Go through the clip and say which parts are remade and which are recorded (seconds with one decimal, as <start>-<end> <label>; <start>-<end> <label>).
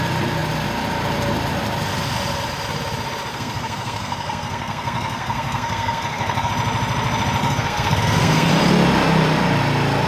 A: 0.0-3.3 recorded; 3.3-6.5 remade; 6.5-7.4 recorded; 7.4-8.5 remade; 8.5-10.1 recorded